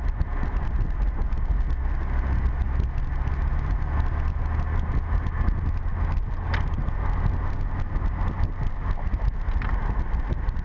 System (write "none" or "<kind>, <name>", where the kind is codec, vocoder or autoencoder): none